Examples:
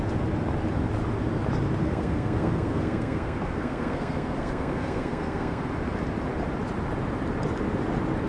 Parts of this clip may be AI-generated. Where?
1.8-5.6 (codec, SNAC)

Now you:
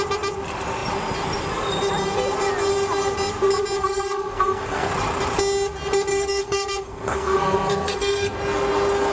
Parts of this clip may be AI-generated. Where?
3.8-4.9 (codec, SNAC); 6.1-8.4